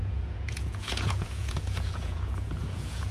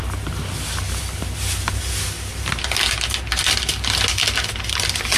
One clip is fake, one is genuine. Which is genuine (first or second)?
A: second